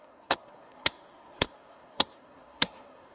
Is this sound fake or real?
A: fake